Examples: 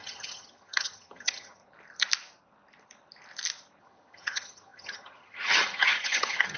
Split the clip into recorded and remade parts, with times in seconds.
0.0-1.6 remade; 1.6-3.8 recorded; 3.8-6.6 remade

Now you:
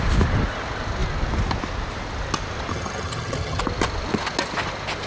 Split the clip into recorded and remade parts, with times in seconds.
0.0-2.7 recorded; 2.7-3.6 remade; 3.6-5.1 recorded

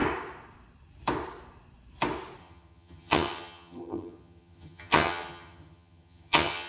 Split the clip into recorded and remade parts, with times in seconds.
0.0-2.4 recorded; 2.4-6.7 remade

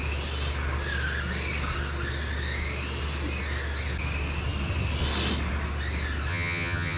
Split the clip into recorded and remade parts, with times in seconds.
0.0-6.3 recorded; 6.3-7.0 remade